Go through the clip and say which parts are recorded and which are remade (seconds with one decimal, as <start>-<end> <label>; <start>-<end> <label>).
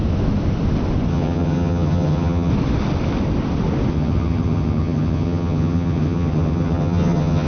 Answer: 0.0-1.1 recorded; 1.1-2.5 remade; 2.5-3.9 recorded; 3.9-7.5 remade